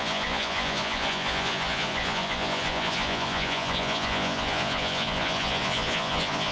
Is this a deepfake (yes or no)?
yes